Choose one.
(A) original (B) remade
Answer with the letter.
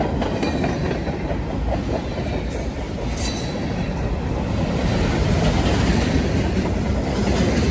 A